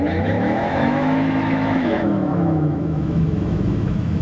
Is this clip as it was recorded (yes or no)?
no